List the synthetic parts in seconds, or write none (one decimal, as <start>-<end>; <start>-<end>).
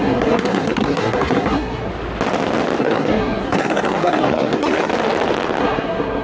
0.0-1.9; 2.8-4.9; 5.6-6.2